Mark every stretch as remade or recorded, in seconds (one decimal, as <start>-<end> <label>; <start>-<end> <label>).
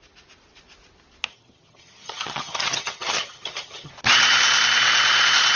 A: 0.0-1.3 recorded; 1.3-3.9 remade; 3.9-5.6 recorded